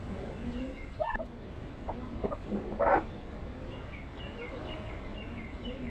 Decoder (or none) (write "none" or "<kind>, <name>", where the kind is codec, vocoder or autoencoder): codec, DAC